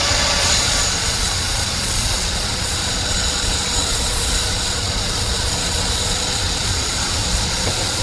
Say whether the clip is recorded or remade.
remade